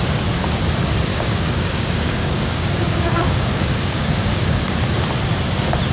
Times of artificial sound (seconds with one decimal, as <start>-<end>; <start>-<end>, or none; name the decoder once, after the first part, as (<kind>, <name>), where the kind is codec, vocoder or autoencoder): 1.1-4.6 (codec, DAC)